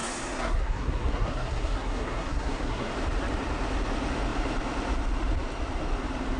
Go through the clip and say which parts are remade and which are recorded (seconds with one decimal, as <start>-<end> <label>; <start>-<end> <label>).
0.0-2.9 remade; 2.9-6.4 recorded